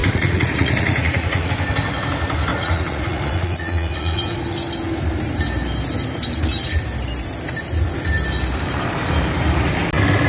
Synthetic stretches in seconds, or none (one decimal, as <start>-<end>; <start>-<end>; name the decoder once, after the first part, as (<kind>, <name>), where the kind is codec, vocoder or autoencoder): 0.0-1.5 (vocoder, Vocos); 2.5-4.2